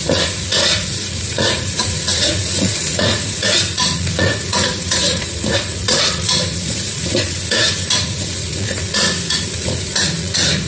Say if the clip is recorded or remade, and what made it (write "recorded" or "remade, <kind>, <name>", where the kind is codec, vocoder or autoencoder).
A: remade, vocoder, Vocos